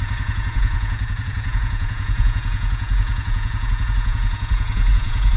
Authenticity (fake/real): fake